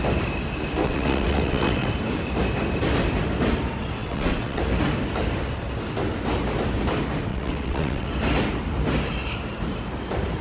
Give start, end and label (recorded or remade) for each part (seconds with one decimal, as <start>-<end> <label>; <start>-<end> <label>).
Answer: 0.0-0.8 recorded; 0.8-1.9 remade; 1.9-4.0 recorded; 4.0-4.6 remade; 4.6-7.3 recorded; 7.3-8.1 remade; 8.1-10.4 recorded